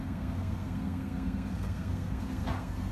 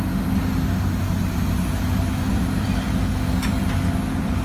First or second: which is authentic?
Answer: second